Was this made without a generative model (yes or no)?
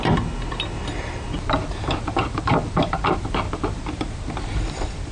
yes